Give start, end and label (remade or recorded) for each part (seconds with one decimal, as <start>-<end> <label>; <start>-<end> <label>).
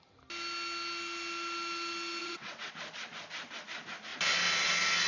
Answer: 0.0-2.2 recorded; 2.2-2.7 remade; 2.7-5.1 recorded